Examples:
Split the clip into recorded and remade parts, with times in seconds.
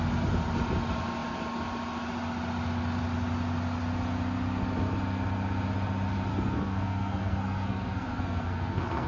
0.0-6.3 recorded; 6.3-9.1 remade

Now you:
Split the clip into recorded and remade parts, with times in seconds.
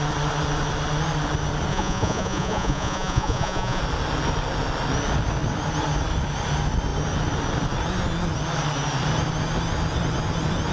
0.0-1.7 recorded; 1.7-3.8 remade; 3.8-10.7 recorded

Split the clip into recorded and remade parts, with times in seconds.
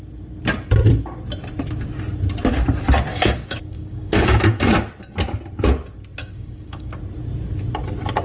0.0-3.1 recorded; 3.1-4.4 remade; 4.4-6.2 recorded; 6.2-7.0 remade; 7.0-8.2 recorded